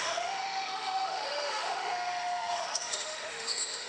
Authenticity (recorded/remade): remade